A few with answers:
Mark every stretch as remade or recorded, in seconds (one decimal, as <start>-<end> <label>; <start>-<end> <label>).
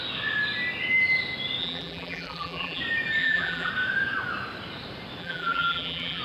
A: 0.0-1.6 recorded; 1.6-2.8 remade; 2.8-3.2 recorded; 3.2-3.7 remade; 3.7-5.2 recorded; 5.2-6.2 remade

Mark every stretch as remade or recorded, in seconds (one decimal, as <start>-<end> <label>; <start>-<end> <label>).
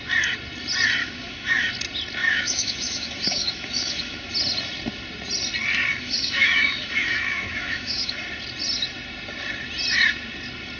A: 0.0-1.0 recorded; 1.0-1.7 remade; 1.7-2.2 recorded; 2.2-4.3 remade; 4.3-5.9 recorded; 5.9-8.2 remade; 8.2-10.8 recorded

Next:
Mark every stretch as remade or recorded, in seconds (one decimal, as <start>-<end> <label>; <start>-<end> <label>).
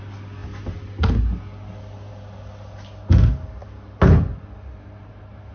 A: 0.0-5.5 recorded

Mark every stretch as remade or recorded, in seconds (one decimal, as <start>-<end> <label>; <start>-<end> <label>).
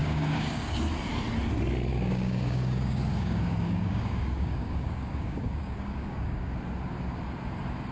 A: 0.0-0.8 remade; 0.8-1.9 recorded; 1.9-6.5 remade; 6.5-7.9 recorded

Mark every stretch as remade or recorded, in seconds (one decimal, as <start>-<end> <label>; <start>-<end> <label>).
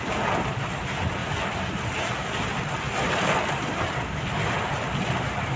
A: 0.0-5.6 recorded